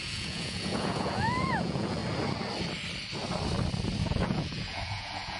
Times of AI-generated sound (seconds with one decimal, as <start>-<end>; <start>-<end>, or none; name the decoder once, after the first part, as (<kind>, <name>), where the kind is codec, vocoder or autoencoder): 0.0-2.0 (vocoder, Vocos); 4.0-5.4